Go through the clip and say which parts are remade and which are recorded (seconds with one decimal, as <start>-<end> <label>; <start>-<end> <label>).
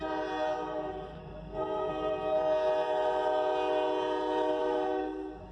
0.0-1.2 recorded; 1.2-1.9 remade; 1.9-4.6 recorded; 4.6-5.5 remade